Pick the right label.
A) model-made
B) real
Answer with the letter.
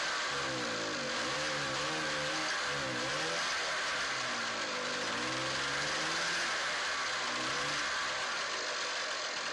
B